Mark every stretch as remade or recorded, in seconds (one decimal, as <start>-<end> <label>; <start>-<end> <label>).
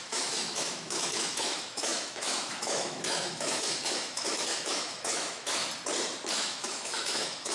0.0-5.6 remade; 5.6-6.3 recorded; 6.3-7.5 remade